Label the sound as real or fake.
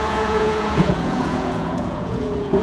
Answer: fake